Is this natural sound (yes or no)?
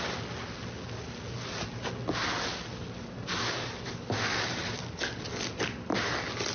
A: yes